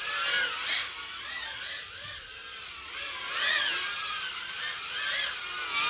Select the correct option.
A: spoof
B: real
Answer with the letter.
B